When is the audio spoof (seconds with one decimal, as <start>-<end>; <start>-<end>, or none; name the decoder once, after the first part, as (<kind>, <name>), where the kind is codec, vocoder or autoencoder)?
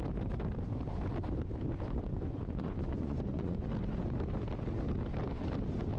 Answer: 2.1-3.7 (vocoder, Vocos)